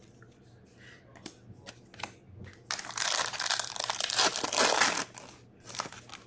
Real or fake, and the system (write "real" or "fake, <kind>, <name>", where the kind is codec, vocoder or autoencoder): real